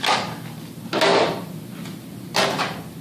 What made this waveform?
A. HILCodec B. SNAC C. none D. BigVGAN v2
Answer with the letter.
C